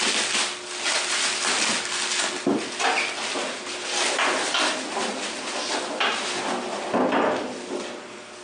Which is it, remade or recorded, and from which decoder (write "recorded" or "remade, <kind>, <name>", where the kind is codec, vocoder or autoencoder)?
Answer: recorded